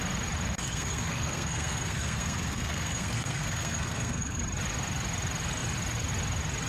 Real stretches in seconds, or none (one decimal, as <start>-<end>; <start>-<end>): 0.0-0.6; 4.4-6.7